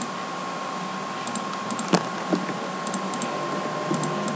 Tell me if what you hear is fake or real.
real